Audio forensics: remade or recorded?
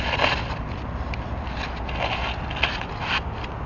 recorded